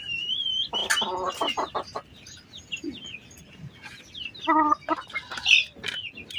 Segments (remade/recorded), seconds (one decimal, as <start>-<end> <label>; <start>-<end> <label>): 0.0-6.4 recorded